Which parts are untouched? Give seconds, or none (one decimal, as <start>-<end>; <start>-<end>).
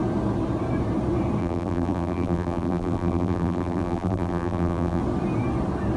0.0-1.4; 5.0-6.0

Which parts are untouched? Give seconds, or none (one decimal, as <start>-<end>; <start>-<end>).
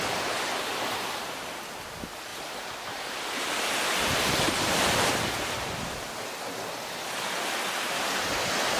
0.0-2.3; 6.1-8.8